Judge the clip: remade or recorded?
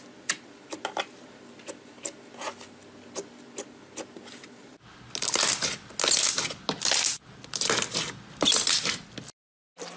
recorded